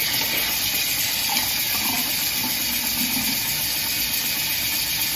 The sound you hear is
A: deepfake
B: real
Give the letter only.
B